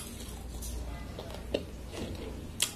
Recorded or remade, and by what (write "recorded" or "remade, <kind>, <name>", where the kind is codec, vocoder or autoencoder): recorded